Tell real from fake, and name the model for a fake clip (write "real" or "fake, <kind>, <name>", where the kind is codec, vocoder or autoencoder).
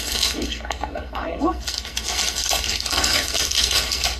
fake, codec, SNAC